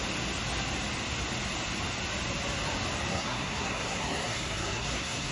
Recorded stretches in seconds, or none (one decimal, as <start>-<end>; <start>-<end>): 0.0-3.1